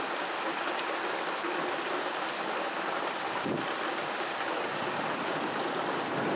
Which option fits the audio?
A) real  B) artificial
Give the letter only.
A